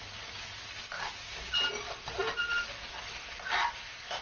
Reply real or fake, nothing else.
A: real